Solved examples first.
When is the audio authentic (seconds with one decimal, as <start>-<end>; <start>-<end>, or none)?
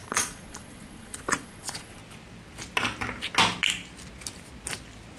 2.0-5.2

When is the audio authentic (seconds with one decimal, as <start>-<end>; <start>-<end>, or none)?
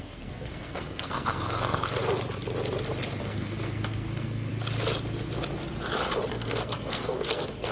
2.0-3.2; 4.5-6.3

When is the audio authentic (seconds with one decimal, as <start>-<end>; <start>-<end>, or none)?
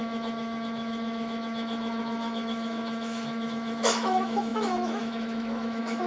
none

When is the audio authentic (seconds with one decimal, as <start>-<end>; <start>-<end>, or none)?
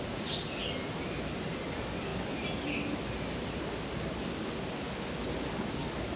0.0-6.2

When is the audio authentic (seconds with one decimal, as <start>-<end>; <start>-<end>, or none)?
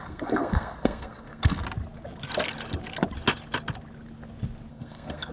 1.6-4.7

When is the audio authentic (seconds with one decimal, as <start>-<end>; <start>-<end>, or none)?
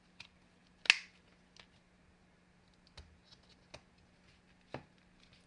0.0-5.5